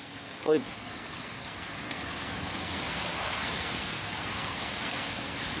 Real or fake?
fake